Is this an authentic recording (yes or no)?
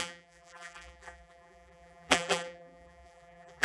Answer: no